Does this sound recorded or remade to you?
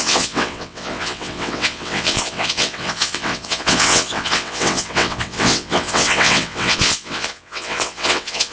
remade